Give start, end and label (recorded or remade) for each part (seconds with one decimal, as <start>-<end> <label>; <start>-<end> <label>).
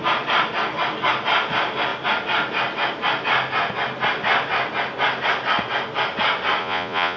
0.0-6.6 recorded; 6.6-7.2 remade